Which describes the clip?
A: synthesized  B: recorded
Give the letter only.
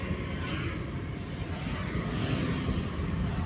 B